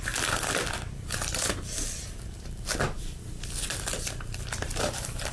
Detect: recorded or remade remade